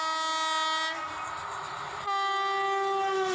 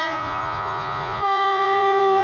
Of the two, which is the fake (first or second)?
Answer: second